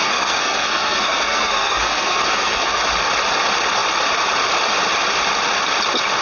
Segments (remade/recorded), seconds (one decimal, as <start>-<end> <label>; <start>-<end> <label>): 0.0-2.8 remade; 2.8-6.2 recorded